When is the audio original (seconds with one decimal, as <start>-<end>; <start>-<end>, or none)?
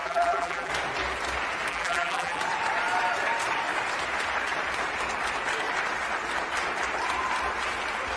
0.7-1.7; 2.4-8.2